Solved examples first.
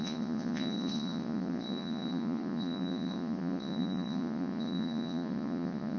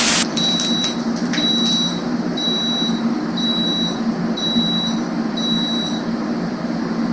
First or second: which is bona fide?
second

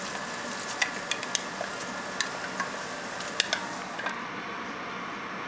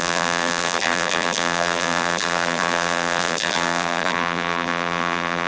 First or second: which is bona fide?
first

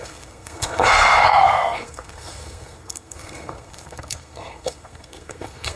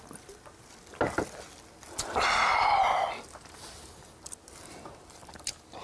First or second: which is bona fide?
second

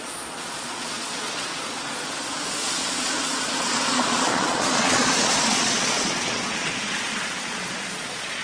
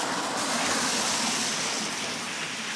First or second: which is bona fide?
second